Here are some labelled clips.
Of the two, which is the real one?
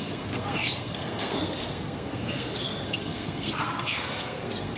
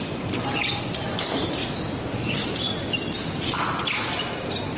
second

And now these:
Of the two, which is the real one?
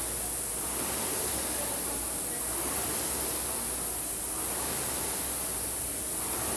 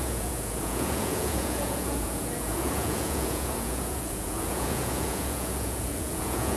first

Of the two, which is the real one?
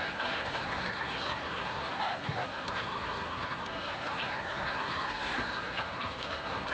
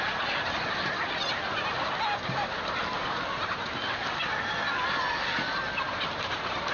second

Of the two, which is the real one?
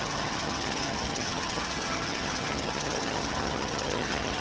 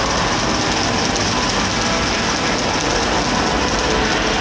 second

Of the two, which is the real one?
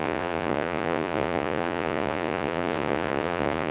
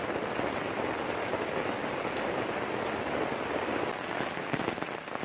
second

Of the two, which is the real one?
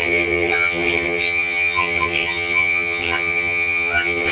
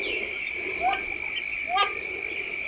second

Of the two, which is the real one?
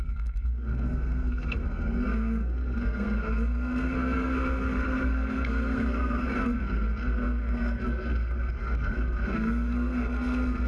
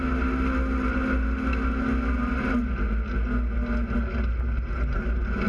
second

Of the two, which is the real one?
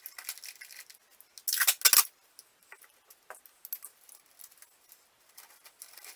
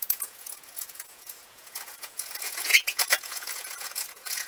first